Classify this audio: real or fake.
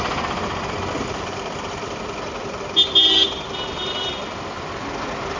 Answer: real